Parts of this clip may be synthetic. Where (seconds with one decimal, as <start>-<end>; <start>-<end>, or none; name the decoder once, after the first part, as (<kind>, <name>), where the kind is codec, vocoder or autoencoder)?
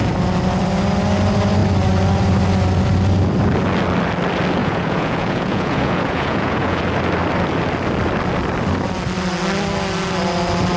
4.6-6.8 (vocoder, Vocos)